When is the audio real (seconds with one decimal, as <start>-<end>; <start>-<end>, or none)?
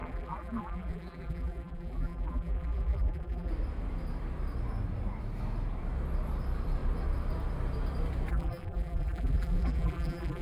3.5-8.3